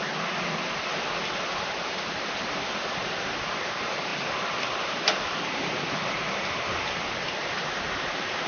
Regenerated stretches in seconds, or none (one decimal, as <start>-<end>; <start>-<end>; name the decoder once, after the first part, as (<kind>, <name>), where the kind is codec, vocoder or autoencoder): 1.7-4.1 (vocoder, BigVGAN v2); 5.4-8.5